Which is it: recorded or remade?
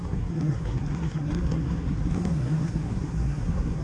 remade